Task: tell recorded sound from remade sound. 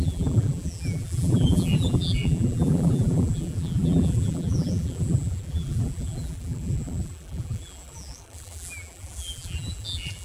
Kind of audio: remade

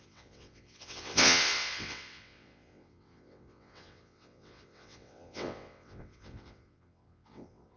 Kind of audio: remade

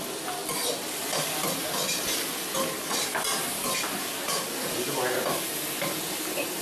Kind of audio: recorded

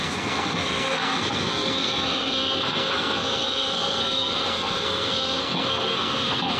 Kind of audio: remade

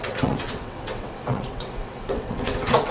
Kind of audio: remade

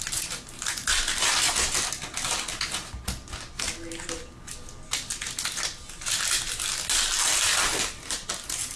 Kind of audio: recorded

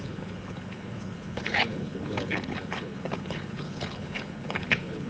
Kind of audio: remade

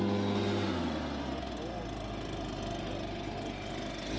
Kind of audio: recorded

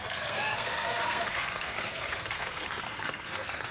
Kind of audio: remade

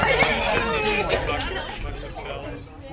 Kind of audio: recorded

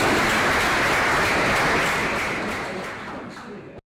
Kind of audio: recorded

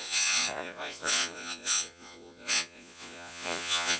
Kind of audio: remade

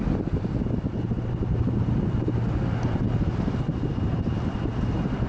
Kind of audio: recorded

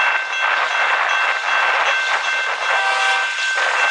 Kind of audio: recorded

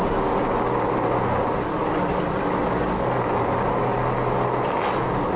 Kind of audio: recorded